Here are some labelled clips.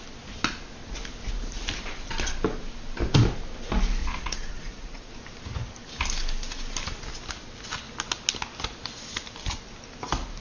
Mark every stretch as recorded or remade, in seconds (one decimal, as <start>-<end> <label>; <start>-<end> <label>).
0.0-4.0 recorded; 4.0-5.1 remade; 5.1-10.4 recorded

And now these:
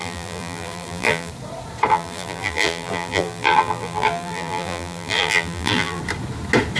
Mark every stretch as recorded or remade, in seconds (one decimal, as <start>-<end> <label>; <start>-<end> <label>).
0.0-1.3 remade; 1.3-1.9 recorded; 1.9-6.0 remade; 6.0-6.8 recorded

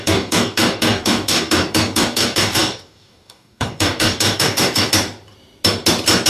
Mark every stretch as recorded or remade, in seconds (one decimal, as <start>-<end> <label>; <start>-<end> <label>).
0.0-4.9 remade; 4.9-6.3 recorded

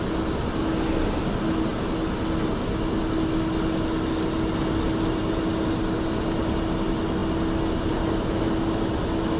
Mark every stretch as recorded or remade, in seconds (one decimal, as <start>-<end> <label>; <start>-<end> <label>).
0.0-9.4 recorded

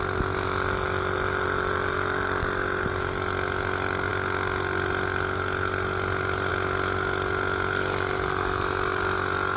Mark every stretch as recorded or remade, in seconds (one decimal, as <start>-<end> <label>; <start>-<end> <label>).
0.0-9.6 recorded